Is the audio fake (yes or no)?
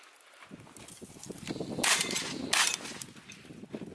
no